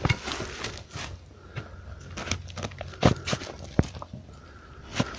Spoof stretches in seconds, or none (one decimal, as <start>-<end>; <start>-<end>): none